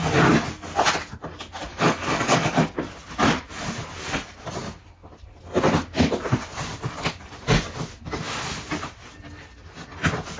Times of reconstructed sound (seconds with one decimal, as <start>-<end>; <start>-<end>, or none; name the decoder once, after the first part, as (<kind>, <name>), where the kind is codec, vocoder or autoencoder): 1.7-2.7 (codec, DAC)